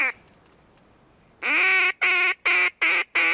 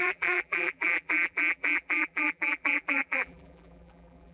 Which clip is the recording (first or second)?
first